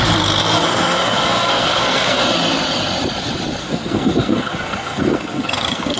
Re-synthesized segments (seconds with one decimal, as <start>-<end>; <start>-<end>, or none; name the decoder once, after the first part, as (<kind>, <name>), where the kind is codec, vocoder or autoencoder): 0.4-2.2 (codec, SNAC); 3.6-6.0